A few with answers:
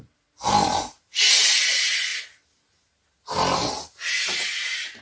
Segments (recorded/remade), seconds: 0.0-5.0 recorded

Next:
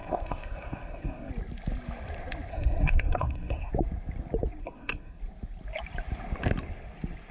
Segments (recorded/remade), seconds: 0.0-1.3 remade; 1.3-2.5 recorded; 2.5-3.7 remade; 3.7-4.6 recorded; 4.6-5.2 remade; 5.2-7.3 recorded

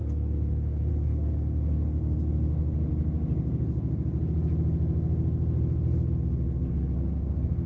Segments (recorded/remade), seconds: 0.0-2.9 remade; 2.9-6.7 recorded; 6.7-7.7 remade

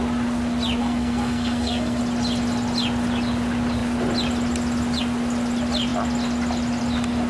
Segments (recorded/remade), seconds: 0.0-0.8 recorded; 0.8-2.0 remade; 2.0-7.3 recorded

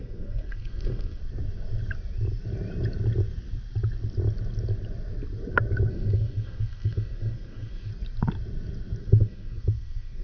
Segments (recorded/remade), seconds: 0.0-1.2 remade; 1.2-5.9 recorded; 5.9-7.9 remade; 7.9-9.0 recorded; 9.0-10.2 remade

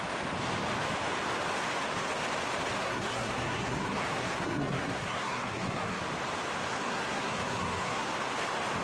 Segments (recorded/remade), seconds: 0.0-2.8 recorded; 2.8-6.0 remade; 6.0-6.7 recorded; 6.7-8.1 remade; 8.1-8.8 recorded

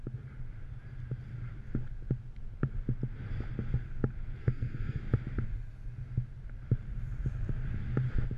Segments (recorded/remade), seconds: 0.0-4.4 recorded; 4.4-5.0 remade; 5.0-8.4 recorded

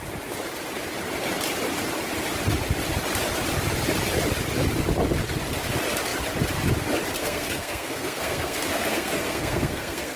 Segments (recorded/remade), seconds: 0.0-7.2 recorded; 7.2-10.2 remade